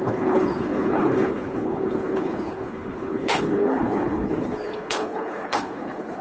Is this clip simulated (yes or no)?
yes